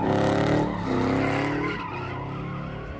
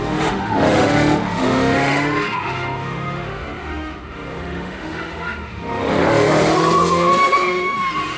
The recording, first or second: first